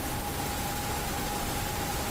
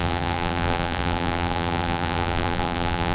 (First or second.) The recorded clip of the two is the first